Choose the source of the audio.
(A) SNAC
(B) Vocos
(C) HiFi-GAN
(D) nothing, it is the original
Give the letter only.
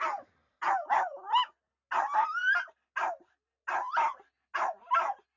D